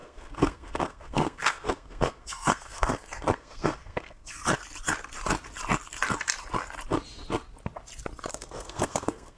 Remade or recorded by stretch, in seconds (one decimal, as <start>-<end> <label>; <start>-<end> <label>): 0.0-4.4 remade; 4.4-8.3 recorded; 8.3-9.4 remade